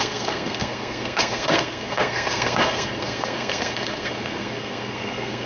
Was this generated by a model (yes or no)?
yes